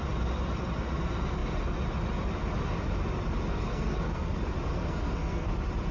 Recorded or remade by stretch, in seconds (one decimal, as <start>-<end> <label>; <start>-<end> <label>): 0.0-3.5 recorded; 3.5-4.3 remade; 4.3-4.7 recorded; 4.7-5.5 remade; 5.5-5.9 recorded